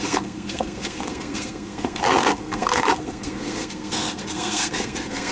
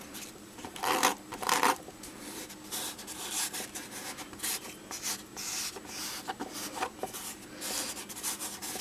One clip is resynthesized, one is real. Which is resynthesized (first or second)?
first